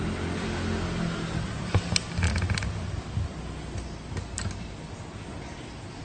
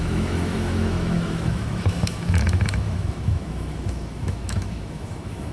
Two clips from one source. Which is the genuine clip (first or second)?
first